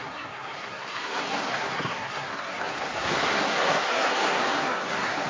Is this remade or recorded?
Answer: remade